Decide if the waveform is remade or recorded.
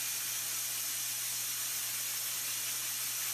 recorded